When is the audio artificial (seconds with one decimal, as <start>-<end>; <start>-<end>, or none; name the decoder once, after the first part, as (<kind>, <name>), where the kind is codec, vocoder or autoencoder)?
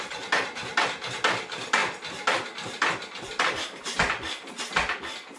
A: none